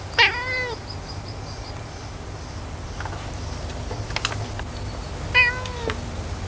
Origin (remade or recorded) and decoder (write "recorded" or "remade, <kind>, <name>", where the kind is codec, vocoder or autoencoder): recorded